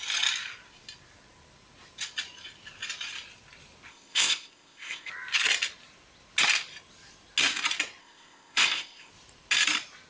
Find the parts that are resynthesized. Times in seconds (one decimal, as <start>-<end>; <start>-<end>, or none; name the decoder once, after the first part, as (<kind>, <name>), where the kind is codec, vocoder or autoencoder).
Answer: 3.9-5.1 (codec, ZipCodec); 8.0-9.1